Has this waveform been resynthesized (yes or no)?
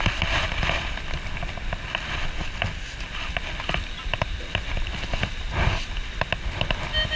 no